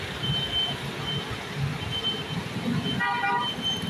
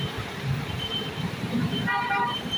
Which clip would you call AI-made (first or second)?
second